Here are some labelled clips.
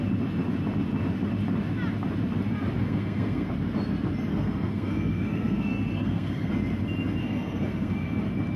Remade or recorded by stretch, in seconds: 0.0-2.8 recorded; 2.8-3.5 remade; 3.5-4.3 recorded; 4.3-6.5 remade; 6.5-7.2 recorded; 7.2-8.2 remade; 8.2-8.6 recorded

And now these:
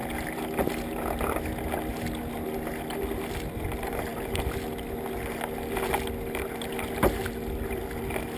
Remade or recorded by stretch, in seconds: 0.0-8.4 recorded

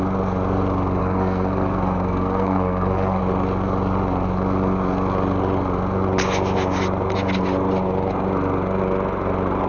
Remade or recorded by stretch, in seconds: 0.0-1.0 recorded; 1.0-3.2 remade; 3.2-9.7 recorded